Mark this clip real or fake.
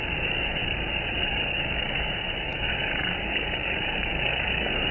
fake